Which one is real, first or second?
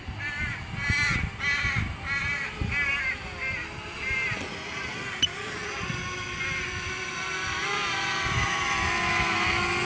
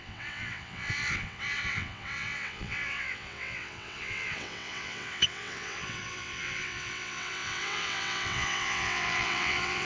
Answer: first